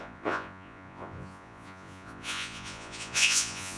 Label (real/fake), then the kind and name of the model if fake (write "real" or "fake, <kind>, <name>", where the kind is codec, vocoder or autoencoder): fake, vocoder, Vocos